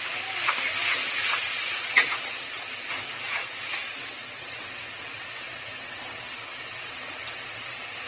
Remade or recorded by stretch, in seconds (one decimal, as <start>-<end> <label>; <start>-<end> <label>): 0.0-1.0 recorded; 1.0-2.7 remade; 2.7-3.8 recorded; 3.8-8.1 remade

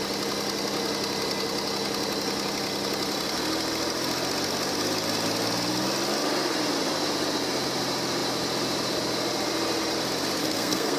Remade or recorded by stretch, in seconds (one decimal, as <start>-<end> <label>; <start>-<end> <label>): 0.0-10.4 recorded; 10.4-11.0 remade

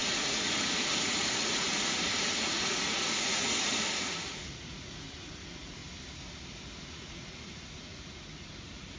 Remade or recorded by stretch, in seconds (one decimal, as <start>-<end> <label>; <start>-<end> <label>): 0.0-5.8 remade; 5.8-6.8 recorded; 6.8-9.0 remade

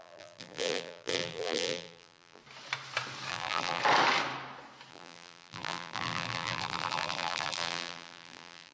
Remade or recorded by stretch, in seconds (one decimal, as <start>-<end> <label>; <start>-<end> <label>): 0.0-2.4 remade; 2.4-3.3 recorded; 3.3-3.8 remade; 3.8-4.9 recorded; 4.9-8.7 remade

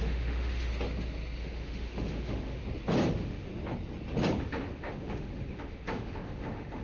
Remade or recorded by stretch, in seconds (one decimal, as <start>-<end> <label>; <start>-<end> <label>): 0.0-0.7 remade; 0.7-1.4 recorded; 1.4-2.6 remade; 2.6-3.1 recorded; 3.1-3.5 remade; 3.5-4.6 recorded; 4.6-6.8 remade

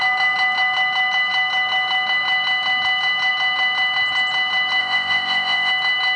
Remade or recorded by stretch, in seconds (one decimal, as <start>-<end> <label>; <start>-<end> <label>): 0.0-4.8 recorded; 4.8-5.7 remade; 5.7-6.2 recorded

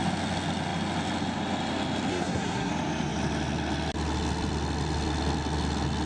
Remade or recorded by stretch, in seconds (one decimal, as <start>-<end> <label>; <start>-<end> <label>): 0.0-2.1 recorded; 2.1-2.7 remade; 2.7-6.1 recorded

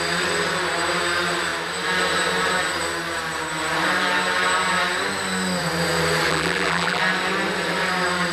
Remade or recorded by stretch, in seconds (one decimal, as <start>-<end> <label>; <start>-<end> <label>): 0.0-6.3 recorded; 6.3-7.0 remade; 7.0-8.3 recorded